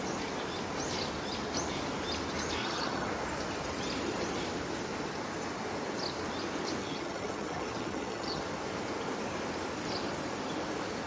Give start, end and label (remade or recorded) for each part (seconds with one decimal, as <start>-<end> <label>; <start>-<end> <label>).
0.0-2.6 recorded; 2.6-3.1 remade; 3.1-6.8 recorded; 6.8-8.4 remade; 8.4-11.1 recorded